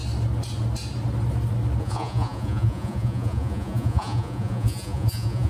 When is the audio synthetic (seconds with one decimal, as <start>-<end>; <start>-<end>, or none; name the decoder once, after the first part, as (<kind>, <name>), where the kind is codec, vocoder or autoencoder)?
1.8-5.5 (vocoder, Vocos)